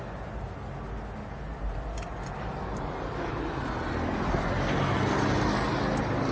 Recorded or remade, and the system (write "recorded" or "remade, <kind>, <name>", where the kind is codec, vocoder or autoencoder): recorded